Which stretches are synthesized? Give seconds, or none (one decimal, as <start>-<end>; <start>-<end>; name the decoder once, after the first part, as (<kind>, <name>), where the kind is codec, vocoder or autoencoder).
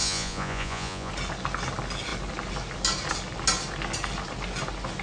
0.0-1.1 (vocoder, Vocos)